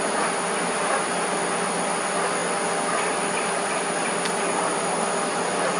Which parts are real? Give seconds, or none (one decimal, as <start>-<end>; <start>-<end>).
0.0-5.8